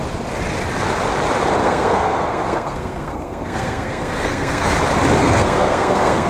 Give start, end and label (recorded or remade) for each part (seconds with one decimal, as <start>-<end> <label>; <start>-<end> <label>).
0.0-1.6 recorded; 1.6-4.7 remade; 4.7-5.2 recorded; 5.2-6.3 remade

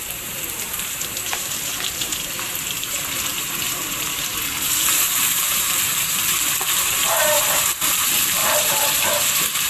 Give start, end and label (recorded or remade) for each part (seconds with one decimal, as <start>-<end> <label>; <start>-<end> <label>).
0.0-6.2 remade; 6.2-6.9 recorded; 6.9-9.7 remade

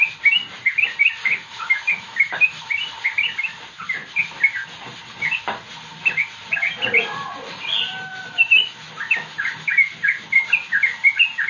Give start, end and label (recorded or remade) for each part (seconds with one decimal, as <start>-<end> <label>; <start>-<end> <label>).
0.0-1.2 recorded; 1.2-2.7 remade; 2.7-7.9 recorded; 7.9-9.7 remade; 9.7-11.5 recorded

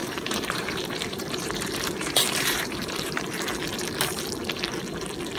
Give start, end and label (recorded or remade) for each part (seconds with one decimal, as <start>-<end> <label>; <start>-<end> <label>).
0.0-3.2 remade; 3.2-5.4 recorded

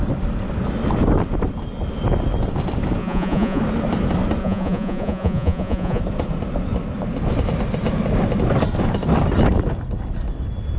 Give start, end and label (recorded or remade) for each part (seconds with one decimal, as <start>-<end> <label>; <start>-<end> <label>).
0.0-3.0 recorded; 3.0-3.6 remade; 3.6-4.4 recorded; 4.4-6.0 remade; 6.0-10.8 recorded

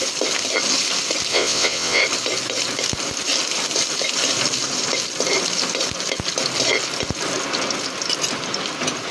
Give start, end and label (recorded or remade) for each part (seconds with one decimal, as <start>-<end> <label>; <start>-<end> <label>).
0.0-1.3 recorded; 1.3-2.0 remade; 2.0-9.1 recorded